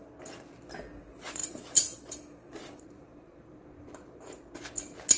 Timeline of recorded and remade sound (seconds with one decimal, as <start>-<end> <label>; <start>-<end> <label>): 0.0-1.4 recorded; 1.4-4.5 remade; 4.5-5.2 recorded